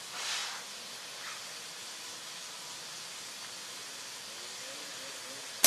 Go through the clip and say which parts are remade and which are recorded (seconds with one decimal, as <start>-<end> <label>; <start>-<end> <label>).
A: 0.0-5.7 recorded